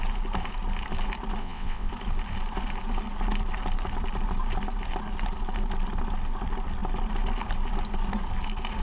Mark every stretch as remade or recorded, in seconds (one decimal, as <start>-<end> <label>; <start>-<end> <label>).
0.0-1.4 recorded; 1.4-1.9 remade; 1.9-8.8 recorded